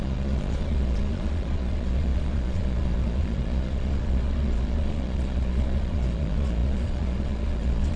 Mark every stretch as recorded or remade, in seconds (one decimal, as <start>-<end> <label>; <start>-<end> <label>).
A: 0.0-8.0 remade